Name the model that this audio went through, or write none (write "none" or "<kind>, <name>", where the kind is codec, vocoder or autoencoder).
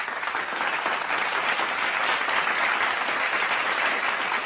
none